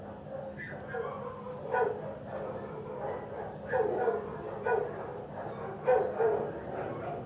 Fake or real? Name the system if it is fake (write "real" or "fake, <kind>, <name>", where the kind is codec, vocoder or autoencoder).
real